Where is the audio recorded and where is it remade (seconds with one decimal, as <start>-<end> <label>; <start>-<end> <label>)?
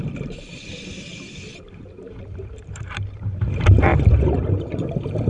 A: 0.0-1.1 recorded; 1.1-3.4 remade; 3.4-5.3 recorded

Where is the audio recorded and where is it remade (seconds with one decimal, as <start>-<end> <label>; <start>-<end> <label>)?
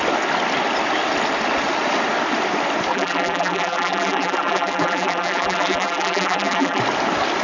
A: 0.0-2.9 recorded; 2.9-6.8 remade; 6.8-7.4 recorded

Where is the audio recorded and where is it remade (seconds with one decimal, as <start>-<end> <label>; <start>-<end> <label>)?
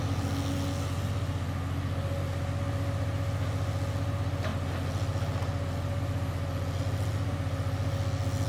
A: 0.0-8.5 recorded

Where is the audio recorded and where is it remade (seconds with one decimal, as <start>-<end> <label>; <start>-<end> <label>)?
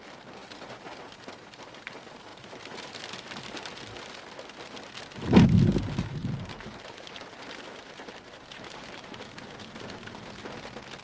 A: 0.0-2.3 recorded; 2.3-3.0 remade; 3.0-6.2 recorded; 6.2-10.4 remade; 10.4-11.0 recorded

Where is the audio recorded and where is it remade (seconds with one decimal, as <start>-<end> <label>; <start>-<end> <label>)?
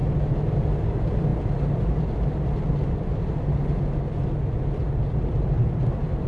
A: 0.0-6.3 recorded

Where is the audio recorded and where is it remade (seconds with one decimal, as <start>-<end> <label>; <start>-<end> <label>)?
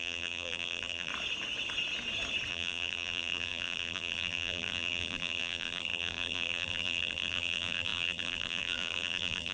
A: 0.0-1.1 remade; 1.1-2.5 recorded; 2.5-9.5 remade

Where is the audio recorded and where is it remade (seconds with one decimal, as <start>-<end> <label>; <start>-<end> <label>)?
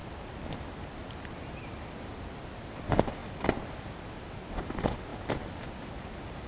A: 0.0-0.7 remade; 0.7-3.2 recorded; 3.2-4.2 remade; 4.2-6.5 recorded